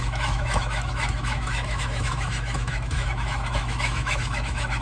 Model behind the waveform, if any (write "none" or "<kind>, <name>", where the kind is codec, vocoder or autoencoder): autoencoder, DAC-VAE